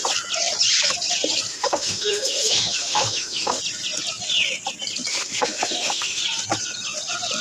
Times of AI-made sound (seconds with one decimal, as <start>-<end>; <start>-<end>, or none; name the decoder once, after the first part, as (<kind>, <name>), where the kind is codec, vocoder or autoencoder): 1.5-3.6 (autoencoder, DAC-VAE); 5.1-6.2